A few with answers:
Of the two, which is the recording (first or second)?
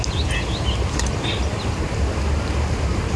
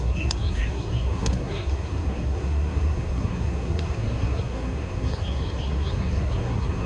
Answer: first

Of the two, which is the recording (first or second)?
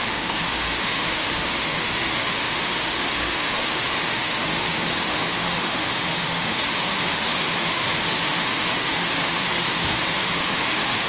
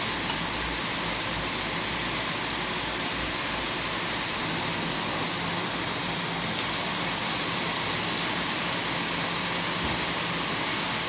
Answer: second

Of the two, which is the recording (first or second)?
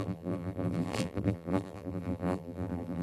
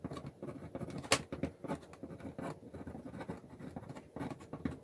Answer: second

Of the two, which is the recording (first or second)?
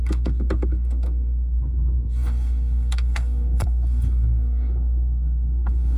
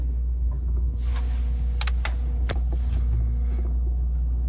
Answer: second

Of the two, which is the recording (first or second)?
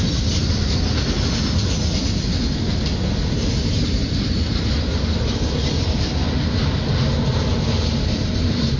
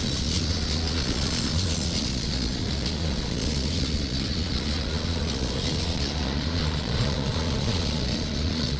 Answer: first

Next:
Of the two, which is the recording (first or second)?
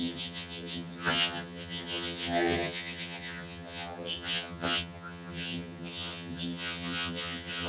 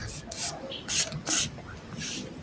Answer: second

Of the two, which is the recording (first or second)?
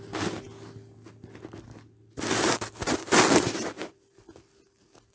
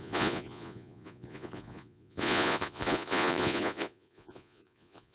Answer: first